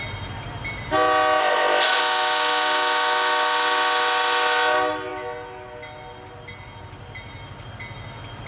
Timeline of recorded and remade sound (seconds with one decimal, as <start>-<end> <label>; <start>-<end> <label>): 0.0-1.4 recorded; 1.4-2.0 remade; 2.0-8.5 recorded